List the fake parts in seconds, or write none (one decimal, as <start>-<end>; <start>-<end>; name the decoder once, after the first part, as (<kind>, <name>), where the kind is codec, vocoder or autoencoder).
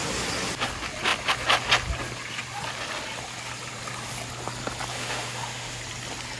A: 4.9-5.8 (autoencoder, DAC-VAE)